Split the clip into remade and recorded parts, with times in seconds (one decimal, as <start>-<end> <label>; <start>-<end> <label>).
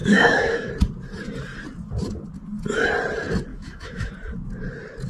0.0-0.7 remade; 0.7-3.5 recorded; 3.5-4.1 remade; 4.1-5.1 recorded